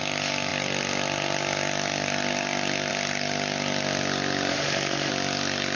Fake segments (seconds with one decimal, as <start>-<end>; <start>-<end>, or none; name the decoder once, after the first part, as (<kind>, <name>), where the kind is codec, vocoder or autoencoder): 4.5-5.1 (autoencoder, DAC-VAE)